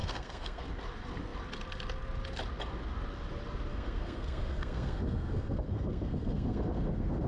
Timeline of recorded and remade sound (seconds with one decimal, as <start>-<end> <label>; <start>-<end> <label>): 0.0-0.6 remade; 0.6-3.7 recorded; 3.7-7.3 remade